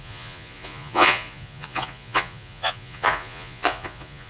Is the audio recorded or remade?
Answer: remade